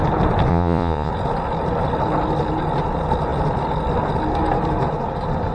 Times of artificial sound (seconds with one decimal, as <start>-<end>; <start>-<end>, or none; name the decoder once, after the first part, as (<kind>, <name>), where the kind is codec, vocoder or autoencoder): 0.5-1.1 (vocoder, Vocos)